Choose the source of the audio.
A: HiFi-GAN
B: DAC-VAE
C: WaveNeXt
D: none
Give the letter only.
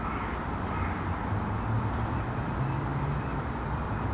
D